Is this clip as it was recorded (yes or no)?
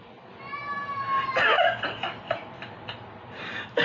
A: yes